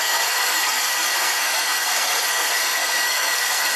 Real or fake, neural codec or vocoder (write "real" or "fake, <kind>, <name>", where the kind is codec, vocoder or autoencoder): fake, codec, SNAC